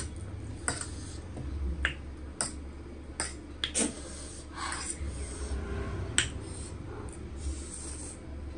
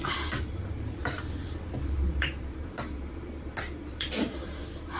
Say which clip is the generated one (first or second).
second